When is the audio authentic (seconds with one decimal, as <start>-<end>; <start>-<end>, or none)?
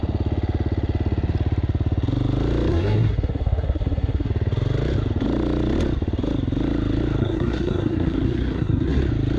0.0-2.7; 4.3-7.2; 9.0-9.4